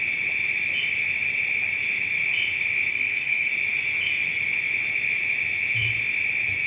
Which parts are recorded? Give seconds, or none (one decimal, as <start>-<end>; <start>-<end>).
0.0-2.9; 3.5-6.7